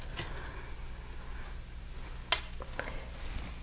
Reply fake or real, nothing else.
real